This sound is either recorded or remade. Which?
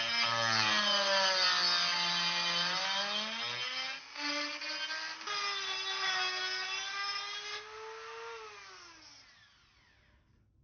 recorded